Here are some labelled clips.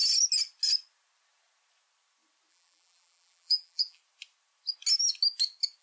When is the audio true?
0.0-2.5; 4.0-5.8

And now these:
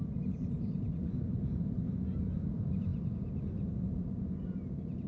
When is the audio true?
0.0-5.1

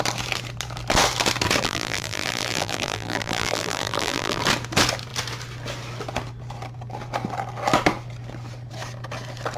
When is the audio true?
0.0-1.6; 4.4-9.6

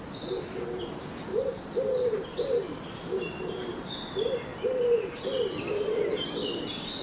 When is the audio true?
0.0-1.3; 3.8-4.5; 5.2-7.0

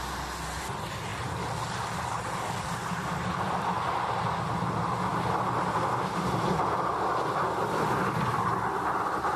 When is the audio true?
0.0-1.1; 2.3-2.9; 3.9-5.1; 5.9-9.4

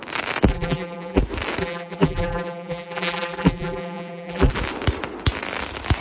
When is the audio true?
0.0-0.5; 1.2-1.6; 4.5-6.0